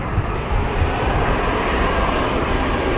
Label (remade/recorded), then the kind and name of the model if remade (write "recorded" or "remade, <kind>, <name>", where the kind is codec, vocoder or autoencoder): recorded